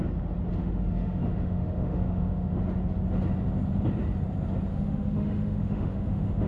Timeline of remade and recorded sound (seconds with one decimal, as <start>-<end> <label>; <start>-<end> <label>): 0.0-0.6 recorded; 0.6-2.6 remade; 2.6-4.7 recorded; 4.7-6.5 remade